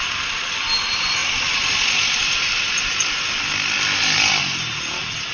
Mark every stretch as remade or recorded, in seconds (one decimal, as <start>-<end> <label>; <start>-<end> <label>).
0.0-5.3 recorded